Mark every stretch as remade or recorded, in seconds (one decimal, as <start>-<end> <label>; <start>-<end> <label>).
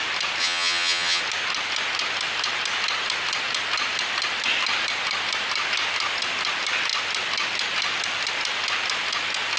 0.0-0.4 recorded; 0.4-1.2 remade; 1.2-9.6 recorded